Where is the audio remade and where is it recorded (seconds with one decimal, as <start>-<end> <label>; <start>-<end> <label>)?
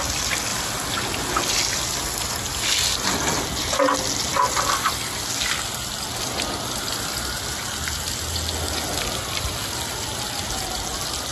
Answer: 0.0-11.3 recorded